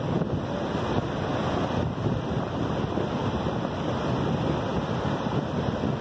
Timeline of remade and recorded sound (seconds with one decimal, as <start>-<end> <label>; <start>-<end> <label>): 0.0-6.0 recorded